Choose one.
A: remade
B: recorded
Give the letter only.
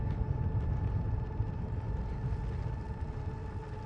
B